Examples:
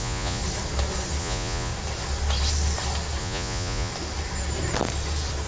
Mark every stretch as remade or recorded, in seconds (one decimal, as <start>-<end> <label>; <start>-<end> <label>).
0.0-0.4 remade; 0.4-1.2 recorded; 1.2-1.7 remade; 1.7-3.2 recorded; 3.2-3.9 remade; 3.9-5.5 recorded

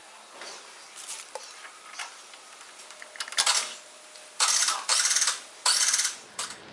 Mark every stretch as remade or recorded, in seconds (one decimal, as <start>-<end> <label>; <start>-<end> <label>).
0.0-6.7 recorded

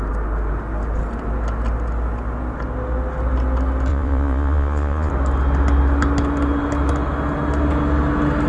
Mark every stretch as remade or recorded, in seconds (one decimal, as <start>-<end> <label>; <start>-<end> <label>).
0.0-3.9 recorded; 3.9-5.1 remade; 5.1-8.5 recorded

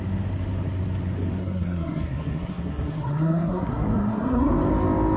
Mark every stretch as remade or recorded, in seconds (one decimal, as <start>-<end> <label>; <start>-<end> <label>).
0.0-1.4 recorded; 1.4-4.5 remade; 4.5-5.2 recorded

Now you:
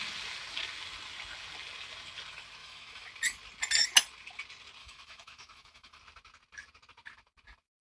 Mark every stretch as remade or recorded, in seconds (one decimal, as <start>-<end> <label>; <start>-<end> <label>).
0.0-2.6 recorded; 2.6-3.1 remade; 3.1-4.8 recorded; 4.8-6.0 remade; 6.0-7.8 recorded

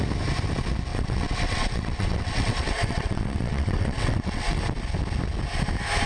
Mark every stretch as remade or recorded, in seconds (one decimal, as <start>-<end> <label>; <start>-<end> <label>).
0.0-0.9 recorded; 0.9-4.6 remade; 4.6-6.1 recorded

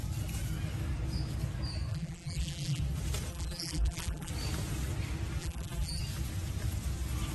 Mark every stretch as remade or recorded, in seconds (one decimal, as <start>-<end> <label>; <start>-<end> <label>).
0.0-1.9 recorded; 1.9-2.8 remade; 2.8-3.3 recorded; 3.3-4.3 remade; 4.3-5.4 recorded; 5.4-6.0 remade; 6.0-7.3 recorded